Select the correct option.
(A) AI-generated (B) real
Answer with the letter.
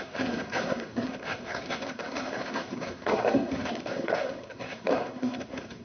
A